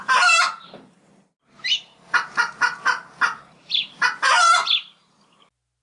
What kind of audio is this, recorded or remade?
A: recorded